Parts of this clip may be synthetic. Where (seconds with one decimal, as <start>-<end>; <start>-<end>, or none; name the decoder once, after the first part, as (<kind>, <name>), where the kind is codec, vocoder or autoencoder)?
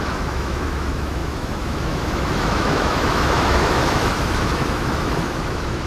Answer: 0.0-5.9 (autoencoder, DAC-VAE)